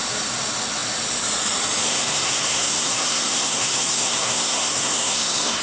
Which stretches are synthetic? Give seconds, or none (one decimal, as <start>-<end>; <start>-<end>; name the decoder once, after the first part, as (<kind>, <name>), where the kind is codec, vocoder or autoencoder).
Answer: 1.8-5.6 (codec, SNAC)